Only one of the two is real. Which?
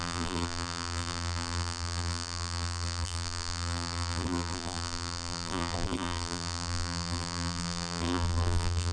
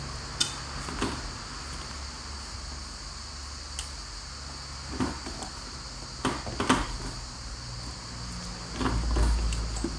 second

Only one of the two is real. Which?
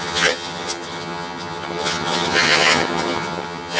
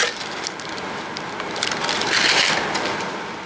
second